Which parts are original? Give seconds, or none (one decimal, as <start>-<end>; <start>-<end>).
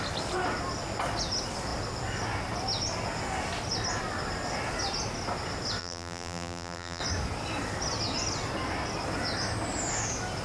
0.0-5.8; 7.0-10.4